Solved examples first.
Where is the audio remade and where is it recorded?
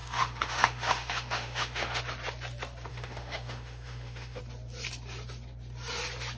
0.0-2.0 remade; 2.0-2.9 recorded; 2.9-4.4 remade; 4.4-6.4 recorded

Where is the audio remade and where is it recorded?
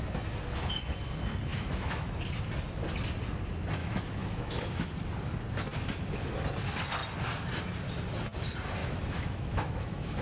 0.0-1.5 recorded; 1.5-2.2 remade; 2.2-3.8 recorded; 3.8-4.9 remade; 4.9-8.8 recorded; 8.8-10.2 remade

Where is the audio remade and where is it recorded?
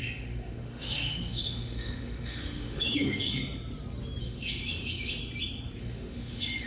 0.0-3.4 remade; 3.4-4.2 recorded; 4.2-5.2 remade; 5.2-5.8 recorded; 5.8-6.7 remade